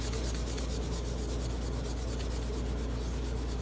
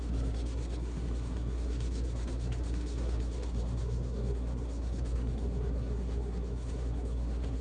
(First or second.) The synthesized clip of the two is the second